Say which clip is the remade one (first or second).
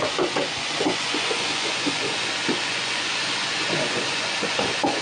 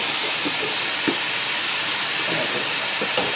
first